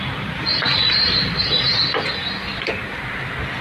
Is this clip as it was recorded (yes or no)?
yes